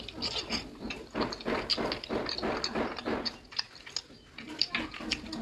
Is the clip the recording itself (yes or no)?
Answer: yes